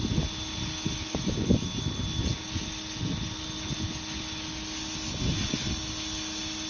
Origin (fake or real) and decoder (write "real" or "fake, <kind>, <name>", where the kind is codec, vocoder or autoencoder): real